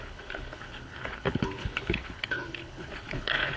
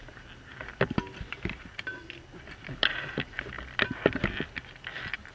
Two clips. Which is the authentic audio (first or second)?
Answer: second